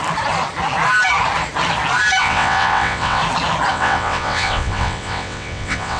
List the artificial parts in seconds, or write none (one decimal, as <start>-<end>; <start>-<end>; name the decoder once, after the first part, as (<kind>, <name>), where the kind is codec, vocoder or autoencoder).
2.2-3.2 (vocoder, WaveNeXt); 3.7-6.0